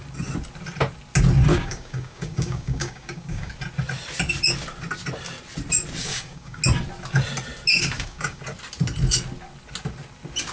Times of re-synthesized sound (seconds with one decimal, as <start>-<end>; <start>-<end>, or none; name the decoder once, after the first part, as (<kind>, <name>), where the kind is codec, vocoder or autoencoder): 1.5-3.5 (codec, DAC); 6.0-6.6; 7.7-8.4